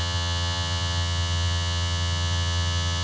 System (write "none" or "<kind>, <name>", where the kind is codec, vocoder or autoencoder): vocoder, HiFi-GAN